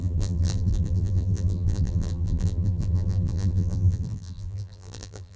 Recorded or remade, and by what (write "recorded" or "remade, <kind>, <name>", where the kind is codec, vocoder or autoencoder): remade, vocoder, BigVGAN v2